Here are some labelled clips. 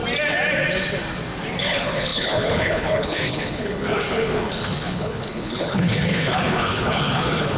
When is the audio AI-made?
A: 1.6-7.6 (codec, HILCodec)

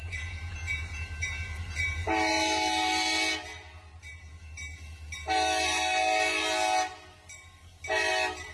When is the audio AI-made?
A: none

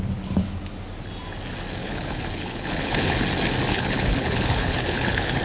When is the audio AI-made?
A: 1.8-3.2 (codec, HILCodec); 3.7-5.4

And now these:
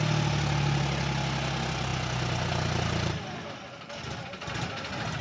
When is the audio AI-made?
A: none

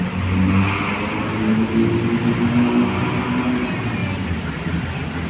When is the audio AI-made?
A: none